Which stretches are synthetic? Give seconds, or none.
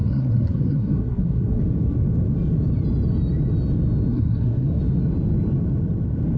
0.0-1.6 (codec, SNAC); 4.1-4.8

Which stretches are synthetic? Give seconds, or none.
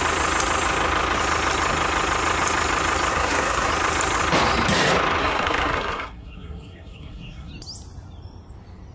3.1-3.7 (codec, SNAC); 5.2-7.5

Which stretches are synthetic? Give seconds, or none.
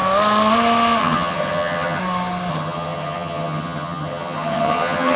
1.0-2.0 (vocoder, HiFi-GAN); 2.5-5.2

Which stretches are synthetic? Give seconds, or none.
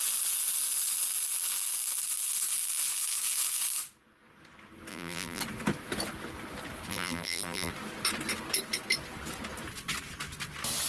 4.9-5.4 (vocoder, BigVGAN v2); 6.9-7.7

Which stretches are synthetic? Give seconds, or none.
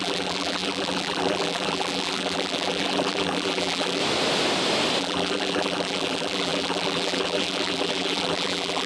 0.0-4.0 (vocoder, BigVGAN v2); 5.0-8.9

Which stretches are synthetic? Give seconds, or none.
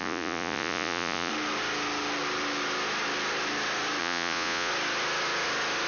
0.0-1.3 (vocoder, Vocos); 4.0-4.7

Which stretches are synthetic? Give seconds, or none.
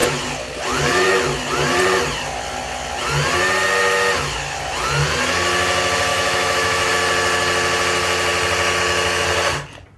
6.1-6.9 (autoencoder, DAC-VAE)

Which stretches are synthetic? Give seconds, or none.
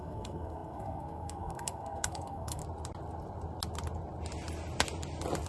0.0-2.6 (codec, SNAC)